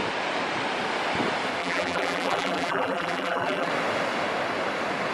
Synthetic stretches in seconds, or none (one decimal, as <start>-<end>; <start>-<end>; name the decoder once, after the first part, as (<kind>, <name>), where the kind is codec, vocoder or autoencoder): 1.6-3.7 (vocoder, BigVGAN v2)